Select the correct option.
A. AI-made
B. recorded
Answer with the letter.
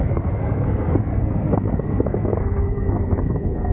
A